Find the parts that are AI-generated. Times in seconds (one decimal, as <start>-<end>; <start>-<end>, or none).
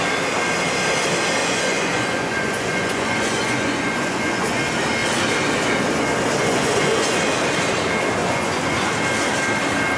1.4-4.6; 6.4-7.2; 8.2-8.9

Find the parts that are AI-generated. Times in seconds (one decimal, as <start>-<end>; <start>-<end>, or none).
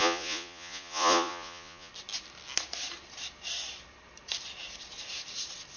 0.0-1.9